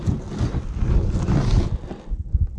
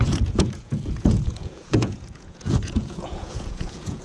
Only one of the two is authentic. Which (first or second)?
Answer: first